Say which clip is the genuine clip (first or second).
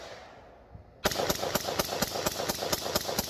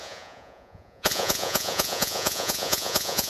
first